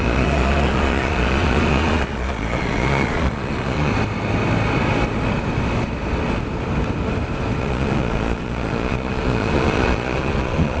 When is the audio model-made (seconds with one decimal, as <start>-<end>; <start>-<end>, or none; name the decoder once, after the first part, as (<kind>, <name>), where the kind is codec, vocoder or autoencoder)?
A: 0.0-3.9 (vocoder, Vocos); 7.6-10.8